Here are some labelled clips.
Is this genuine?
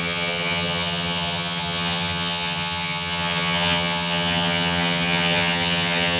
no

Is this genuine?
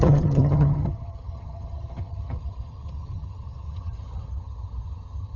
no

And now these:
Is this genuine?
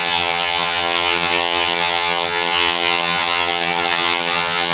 no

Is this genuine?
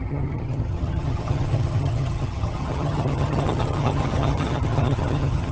no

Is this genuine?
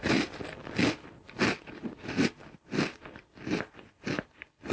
yes